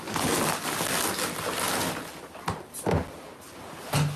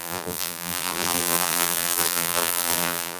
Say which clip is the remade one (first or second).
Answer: second